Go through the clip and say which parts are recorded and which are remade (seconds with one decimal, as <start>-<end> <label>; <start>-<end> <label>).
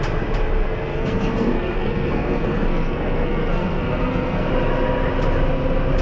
0.0-0.9 recorded; 0.9-4.5 remade; 4.5-6.0 recorded